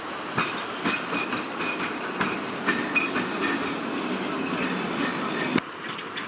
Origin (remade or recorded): recorded